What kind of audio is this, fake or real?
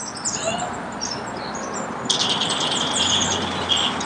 real